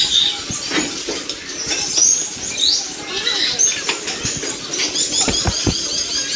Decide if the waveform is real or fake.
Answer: real